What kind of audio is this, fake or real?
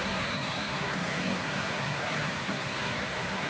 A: fake